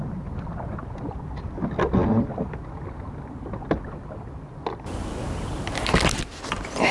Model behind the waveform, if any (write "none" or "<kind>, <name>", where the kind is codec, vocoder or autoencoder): none